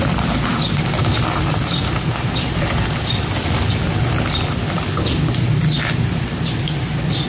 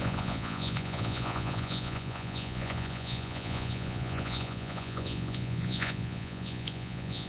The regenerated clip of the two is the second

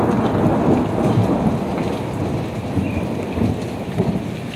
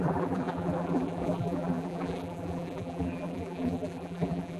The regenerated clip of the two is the second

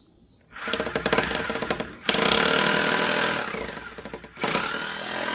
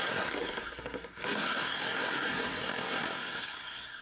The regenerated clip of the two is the second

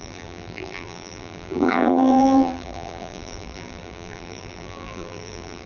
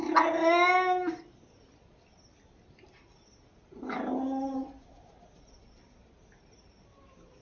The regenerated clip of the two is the first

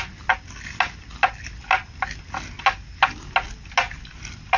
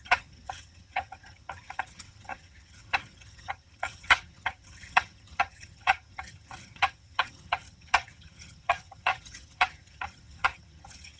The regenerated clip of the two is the second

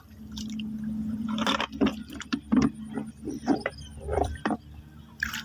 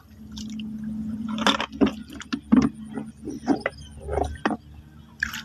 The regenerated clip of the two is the first